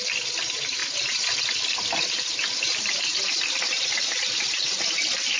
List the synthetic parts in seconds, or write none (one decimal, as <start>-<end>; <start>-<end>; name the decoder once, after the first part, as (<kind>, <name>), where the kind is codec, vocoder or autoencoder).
none